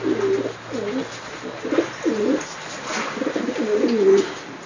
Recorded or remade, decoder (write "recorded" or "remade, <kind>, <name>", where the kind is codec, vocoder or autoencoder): recorded